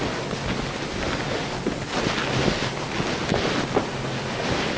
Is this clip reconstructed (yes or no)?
no